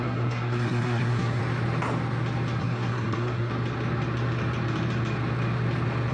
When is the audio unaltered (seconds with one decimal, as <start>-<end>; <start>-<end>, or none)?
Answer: 1.4-2.6; 3.5-6.1